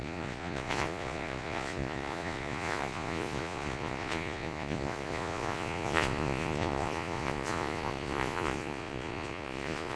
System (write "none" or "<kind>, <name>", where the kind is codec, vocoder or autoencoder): vocoder, Vocos